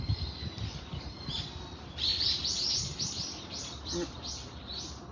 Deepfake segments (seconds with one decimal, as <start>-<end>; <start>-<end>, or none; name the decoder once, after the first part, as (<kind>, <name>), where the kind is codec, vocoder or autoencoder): none